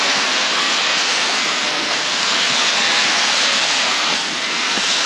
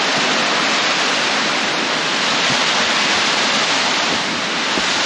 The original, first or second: second